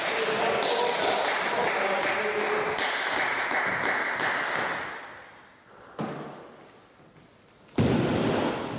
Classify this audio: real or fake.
real